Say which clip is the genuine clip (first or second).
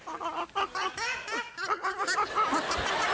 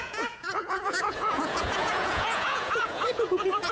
first